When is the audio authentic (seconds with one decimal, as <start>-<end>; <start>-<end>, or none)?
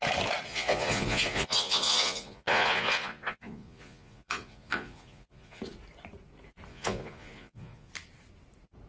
0.0-0.5; 5.6-6.7; 7.9-8.9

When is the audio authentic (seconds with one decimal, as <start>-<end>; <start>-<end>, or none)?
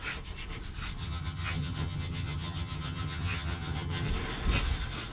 0.0-1.0; 4.1-5.1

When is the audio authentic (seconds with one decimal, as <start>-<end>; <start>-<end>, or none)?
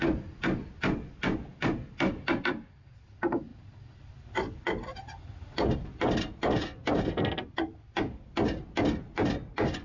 0.0-9.8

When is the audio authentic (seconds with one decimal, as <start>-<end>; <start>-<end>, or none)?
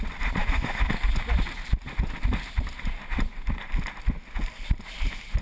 0.0-0.4; 0.9-5.4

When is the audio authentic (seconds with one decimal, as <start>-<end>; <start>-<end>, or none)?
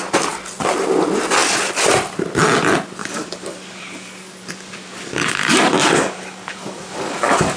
0.0-3.0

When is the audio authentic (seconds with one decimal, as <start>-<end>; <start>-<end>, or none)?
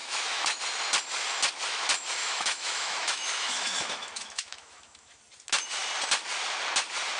0.6-2.2; 5.2-7.2